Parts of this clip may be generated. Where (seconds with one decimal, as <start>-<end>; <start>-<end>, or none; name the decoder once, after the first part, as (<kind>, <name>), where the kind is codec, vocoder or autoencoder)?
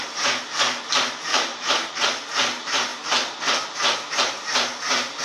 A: 1.3-1.9 (autoencoder, DAC-VAE)